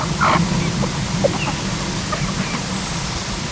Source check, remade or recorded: remade